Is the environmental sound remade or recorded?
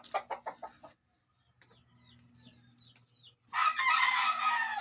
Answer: recorded